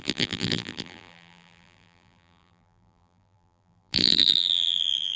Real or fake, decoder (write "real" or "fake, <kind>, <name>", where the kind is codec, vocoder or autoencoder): fake, vocoder, BigVGAN v2